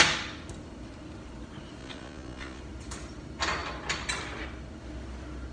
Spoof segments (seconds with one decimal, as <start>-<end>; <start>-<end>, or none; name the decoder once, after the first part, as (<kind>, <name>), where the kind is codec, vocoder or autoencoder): 1.8-2.6 (vocoder, Vocos)

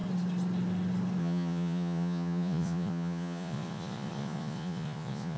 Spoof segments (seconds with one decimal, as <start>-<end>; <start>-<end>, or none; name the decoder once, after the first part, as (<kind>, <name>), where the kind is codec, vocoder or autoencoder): 1.2-5.4 (vocoder, Vocos)

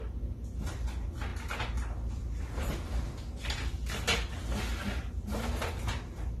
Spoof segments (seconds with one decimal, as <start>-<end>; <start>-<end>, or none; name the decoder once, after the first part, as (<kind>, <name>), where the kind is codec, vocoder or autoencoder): none

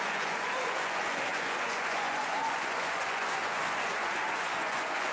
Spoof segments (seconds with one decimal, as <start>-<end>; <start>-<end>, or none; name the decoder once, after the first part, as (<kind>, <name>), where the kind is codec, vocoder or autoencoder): 0.0-5.1 (vocoder, Vocos)

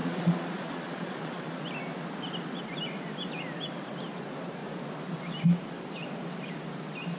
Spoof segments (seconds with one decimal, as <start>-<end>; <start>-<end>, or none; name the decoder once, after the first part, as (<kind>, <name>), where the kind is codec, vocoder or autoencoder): 0.0-1.6 (vocoder, Vocos)

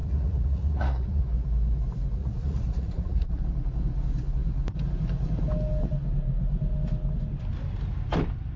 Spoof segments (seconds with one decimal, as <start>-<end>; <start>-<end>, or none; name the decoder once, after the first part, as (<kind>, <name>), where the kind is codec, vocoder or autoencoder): 0.0-1.2 (vocoder, Vocos); 2.2-3.4

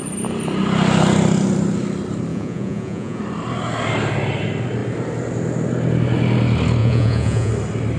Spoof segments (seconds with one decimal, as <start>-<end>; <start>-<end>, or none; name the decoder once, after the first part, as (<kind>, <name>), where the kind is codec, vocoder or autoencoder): 2.3-3.2 (vocoder, Vocos); 6.8-7.5

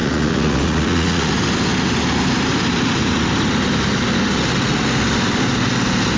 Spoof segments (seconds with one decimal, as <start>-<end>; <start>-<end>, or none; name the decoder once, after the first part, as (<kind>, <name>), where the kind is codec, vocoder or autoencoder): 0.0-1.3 (vocoder, Vocos)